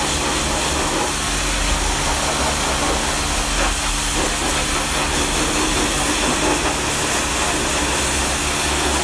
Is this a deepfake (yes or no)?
no